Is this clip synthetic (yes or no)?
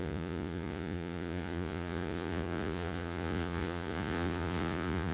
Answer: yes